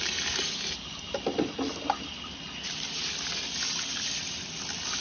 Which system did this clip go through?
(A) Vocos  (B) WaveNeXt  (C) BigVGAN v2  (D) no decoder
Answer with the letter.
C